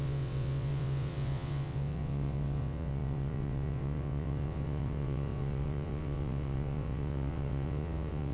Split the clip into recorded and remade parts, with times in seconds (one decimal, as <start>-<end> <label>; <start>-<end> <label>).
0.0-8.3 remade

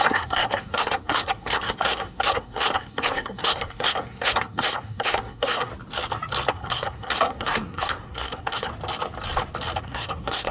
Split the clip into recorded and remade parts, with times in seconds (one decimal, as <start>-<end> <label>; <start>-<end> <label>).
0.0-5.7 remade; 5.7-6.5 recorded; 6.5-8.7 remade; 8.7-9.8 recorded; 9.8-10.5 remade

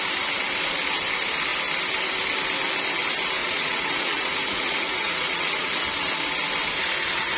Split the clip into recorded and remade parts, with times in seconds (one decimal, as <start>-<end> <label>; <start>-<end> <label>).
0.0-3.4 recorded; 3.4-5.8 remade; 5.8-7.4 recorded

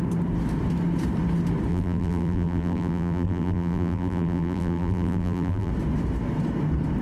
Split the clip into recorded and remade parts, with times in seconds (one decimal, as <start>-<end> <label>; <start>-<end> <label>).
0.0-1.7 recorded; 1.7-5.7 remade; 5.7-7.0 recorded

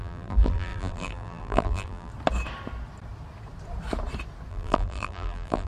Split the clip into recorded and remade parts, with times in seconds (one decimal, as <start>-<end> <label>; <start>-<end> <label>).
0.0-2.1 remade; 2.1-4.5 recorded; 4.5-5.7 remade